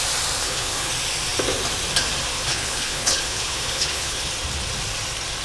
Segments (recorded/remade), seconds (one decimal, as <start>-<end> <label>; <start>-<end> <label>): 0.0-0.4 recorded; 0.4-0.9 remade; 0.9-2.3 recorded; 2.3-4.3 remade; 4.3-5.4 recorded